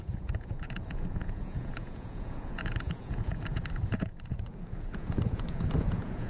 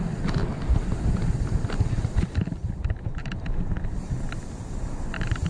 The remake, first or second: first